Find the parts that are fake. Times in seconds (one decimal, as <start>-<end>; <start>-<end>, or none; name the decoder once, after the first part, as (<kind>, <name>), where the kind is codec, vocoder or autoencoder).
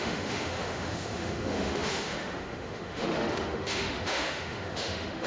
0.0-5.3 (autoencoder, DAC-VAE)